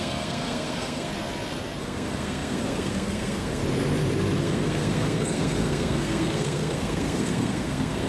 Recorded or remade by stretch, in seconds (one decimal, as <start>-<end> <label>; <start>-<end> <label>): 0.0-1.1 remade; 1.1-1.8 recorded; 1.8-3.6 remade; 3.6-4.4 recorded; 4.4-8.1 remade